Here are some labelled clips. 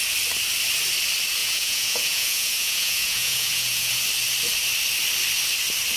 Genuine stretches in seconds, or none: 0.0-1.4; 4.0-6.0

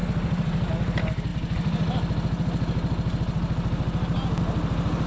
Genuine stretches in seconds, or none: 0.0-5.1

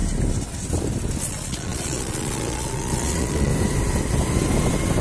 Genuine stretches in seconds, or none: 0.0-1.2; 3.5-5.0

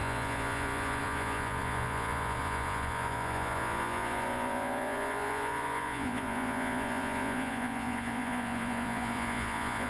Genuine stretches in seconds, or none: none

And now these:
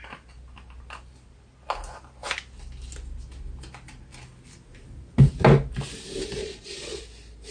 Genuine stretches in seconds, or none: 0.0-6.4; 7.0-7.5

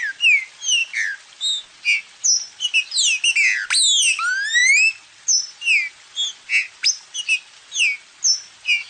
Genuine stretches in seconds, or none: 0.0-8.9

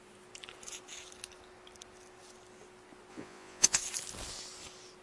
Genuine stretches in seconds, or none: 0.0-3.1; 3.8-5.0

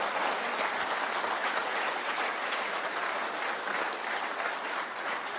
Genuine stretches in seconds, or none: 0.0-1.4; 3.0-5.4